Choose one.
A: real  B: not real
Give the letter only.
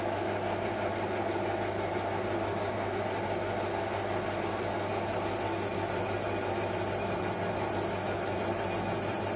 A